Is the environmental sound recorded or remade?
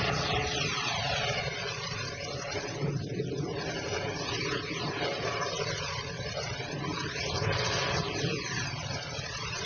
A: remade